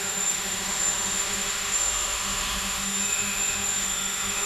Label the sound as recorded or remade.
remade